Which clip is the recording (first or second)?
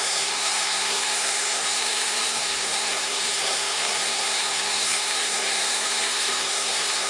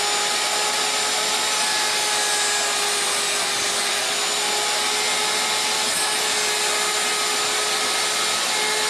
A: second